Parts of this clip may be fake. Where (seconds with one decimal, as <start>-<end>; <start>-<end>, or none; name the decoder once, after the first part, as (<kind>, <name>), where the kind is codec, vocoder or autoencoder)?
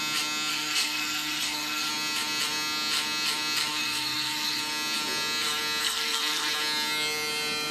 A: 0.5-1.9 (codec, SNAC); 3.7-4.6; 5.8-6.5